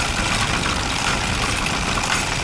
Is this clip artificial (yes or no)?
no